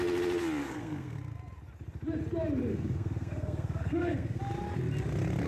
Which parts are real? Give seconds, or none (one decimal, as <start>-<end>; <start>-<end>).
0.0-0.6; 1.2-2.7; 4.4-5.5